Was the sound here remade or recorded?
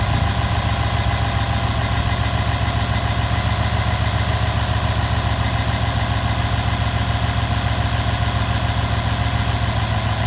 recorded